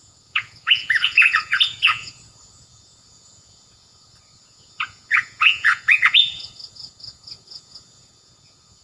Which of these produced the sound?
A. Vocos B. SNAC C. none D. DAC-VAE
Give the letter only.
A